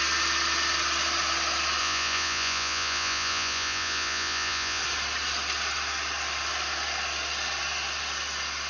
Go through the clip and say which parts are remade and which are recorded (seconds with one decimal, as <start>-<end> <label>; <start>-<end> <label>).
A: 0.0-1.8 recorded; 1.8-4.8 remade; 4.8-8.7 recorded